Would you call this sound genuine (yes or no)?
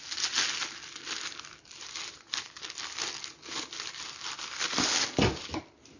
yes